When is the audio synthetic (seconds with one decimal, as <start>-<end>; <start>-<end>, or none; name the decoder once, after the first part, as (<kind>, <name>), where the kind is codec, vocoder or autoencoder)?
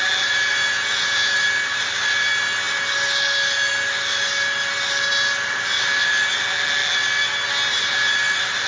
0.5-1.3 (vocoder, Vocos)